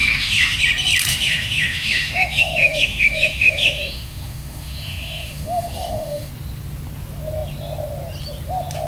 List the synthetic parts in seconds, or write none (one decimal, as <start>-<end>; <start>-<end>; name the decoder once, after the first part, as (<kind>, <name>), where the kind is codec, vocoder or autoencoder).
0.0-0.6 (autoencoder, DAC-VAE); 1.1-6.3